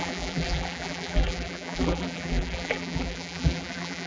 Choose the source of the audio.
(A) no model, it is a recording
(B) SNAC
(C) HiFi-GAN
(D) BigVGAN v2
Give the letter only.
D